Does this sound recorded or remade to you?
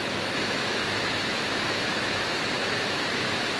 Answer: remade